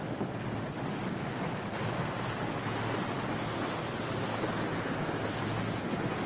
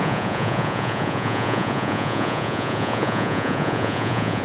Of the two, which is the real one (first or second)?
first